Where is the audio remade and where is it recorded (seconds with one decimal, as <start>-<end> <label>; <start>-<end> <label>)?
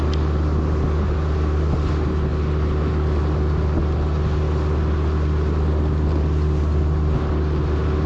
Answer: 0.0-8.1 recorded